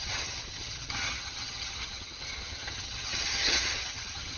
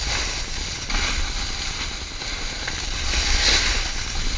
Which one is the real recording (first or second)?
second